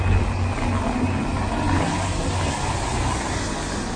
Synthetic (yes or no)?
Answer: no